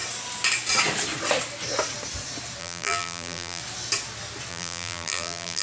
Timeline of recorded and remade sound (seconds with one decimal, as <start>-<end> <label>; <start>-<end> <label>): 0.0-2.6 recorded; 2.6-3.6 remade; 3.6-4.5 recorded; 4.5-5.6 remade